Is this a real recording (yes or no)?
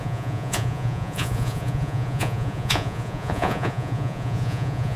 no